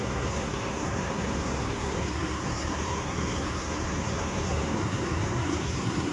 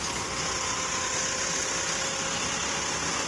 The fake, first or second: first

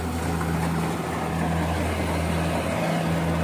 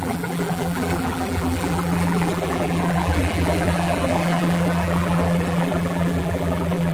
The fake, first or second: second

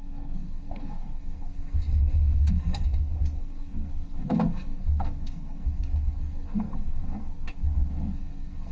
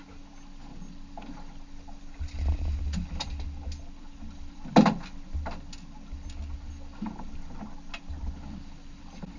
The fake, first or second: first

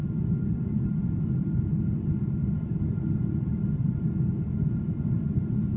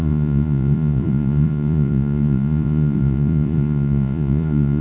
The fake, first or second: second